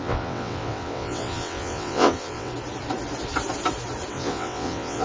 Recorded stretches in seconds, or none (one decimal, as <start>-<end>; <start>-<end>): 2.5-4.1